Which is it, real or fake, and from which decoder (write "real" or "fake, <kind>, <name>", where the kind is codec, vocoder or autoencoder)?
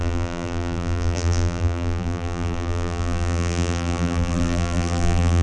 fake, vocoder, BigVGAN v2